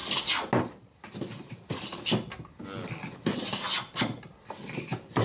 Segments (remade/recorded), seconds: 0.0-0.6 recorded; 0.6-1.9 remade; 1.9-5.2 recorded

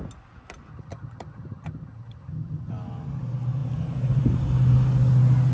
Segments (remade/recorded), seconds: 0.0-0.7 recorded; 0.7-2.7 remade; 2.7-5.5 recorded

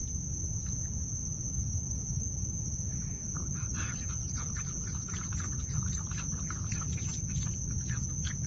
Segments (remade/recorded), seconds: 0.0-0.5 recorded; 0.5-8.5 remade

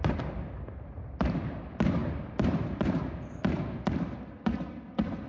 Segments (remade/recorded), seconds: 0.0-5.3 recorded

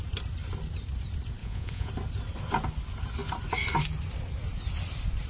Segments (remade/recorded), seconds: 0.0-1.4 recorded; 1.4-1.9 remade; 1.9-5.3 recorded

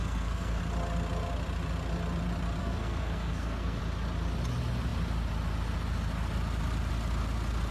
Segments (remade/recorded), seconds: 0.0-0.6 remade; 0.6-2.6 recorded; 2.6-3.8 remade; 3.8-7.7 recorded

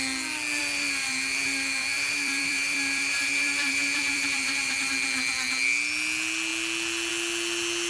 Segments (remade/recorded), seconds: 0.0-0.6 recorded; 0.6-4.9 remade; 4.9-7.9 recorded